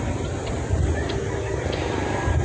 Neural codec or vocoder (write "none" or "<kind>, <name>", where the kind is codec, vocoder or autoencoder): none